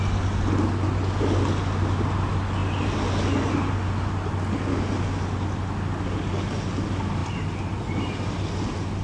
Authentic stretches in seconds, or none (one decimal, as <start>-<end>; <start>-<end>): 0.0-9.0